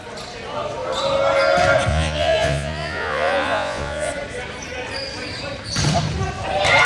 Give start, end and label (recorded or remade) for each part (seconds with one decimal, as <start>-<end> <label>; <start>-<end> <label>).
0.0-1.9 recorded; 1.9-4.1 remade; 4.1-6.9 recorded